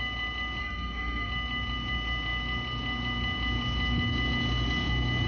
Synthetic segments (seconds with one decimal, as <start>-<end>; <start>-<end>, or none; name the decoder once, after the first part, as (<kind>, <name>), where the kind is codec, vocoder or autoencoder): 0.6-1.3 (codec, SNAC)